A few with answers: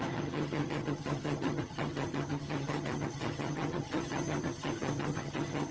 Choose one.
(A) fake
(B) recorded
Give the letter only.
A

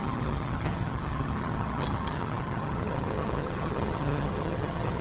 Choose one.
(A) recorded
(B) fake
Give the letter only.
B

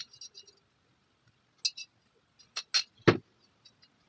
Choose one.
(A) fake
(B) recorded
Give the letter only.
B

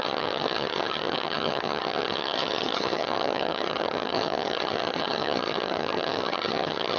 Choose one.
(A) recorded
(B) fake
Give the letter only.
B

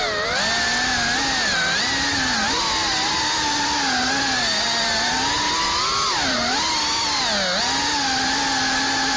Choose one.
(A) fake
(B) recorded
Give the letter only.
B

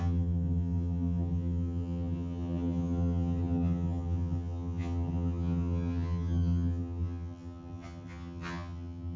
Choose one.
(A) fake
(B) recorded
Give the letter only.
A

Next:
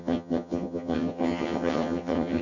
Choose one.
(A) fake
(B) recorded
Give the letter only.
A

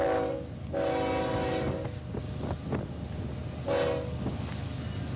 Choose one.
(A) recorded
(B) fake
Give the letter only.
A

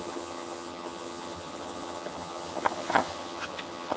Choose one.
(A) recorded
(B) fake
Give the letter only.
B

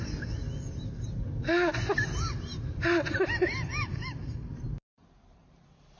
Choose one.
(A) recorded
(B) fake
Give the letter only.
A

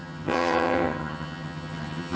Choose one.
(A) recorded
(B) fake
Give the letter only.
B